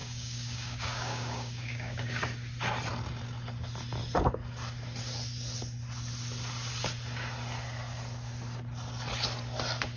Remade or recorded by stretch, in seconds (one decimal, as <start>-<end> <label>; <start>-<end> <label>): 0.0-2.2 remade; 2.2-10.0 recorded

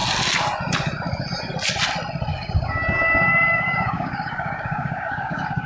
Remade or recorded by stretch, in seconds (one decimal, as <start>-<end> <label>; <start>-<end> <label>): 0.0-2.3 recorded; 2.3-5.7 remade

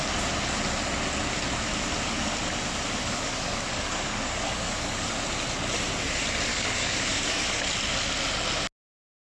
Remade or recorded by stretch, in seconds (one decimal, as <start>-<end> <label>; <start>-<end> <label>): 0.0-3.0 recorded; 3.0-5.1 remade; 5.1-6.5 recorded; 6.5-7.7 remade; 7.7-9.3 recorded

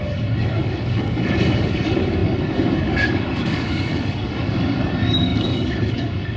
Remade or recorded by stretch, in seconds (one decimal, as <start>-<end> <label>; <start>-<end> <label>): 0.0-6.4 remade

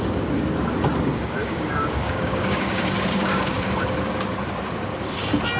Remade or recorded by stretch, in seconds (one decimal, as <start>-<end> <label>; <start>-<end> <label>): 0.0-1.4 recorded; 1.4-3.6 remade; 3.6-5.6 recorded